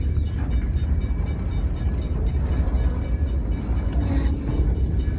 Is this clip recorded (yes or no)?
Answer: yes